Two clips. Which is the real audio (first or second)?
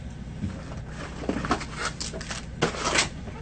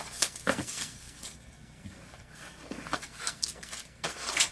first